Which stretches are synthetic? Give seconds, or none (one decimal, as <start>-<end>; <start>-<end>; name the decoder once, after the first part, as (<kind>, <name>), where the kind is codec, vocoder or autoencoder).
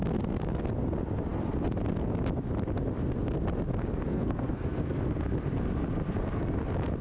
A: 4.1-5.0 (codec, SNAC)